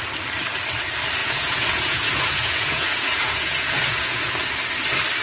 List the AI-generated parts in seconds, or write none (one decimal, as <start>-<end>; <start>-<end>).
1.2-4.3